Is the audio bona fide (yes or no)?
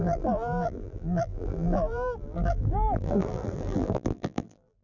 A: no